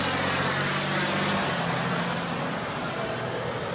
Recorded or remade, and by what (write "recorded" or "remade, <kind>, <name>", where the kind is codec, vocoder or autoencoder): recorded